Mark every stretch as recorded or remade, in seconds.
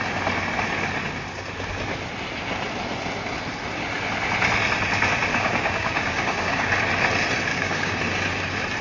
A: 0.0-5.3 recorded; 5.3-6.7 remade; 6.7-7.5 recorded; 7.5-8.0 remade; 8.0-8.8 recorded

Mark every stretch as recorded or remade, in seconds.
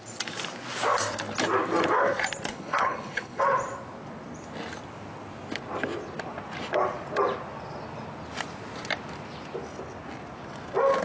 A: 0.0-2.5 recorded; 2.5-3.4 remade; 3.4-11.0 recorded